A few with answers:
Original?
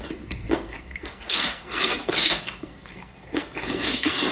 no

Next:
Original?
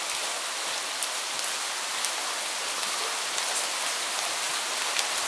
yes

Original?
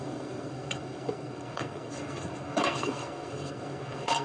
no